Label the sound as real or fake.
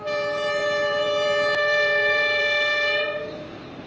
fake